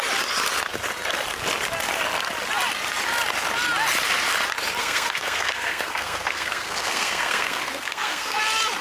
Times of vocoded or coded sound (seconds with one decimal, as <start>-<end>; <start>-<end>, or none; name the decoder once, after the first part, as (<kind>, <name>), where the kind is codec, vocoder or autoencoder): 4.8-8.4 (codec, SNAC)